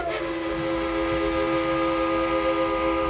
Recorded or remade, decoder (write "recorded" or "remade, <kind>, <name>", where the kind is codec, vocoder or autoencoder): recorded